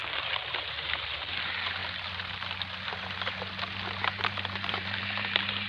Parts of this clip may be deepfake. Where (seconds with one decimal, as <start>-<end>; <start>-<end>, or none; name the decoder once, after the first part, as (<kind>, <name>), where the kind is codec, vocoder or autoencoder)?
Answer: 0.0-1.8 (vocoder, BigVGAN v2); 4.2-5.7